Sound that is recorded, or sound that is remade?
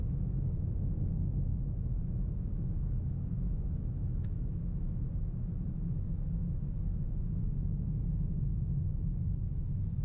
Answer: remade